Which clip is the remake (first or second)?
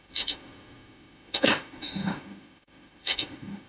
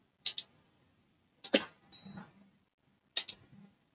first